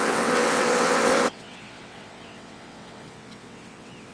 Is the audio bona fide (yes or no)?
no